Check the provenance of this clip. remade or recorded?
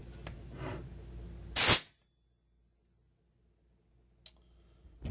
recorded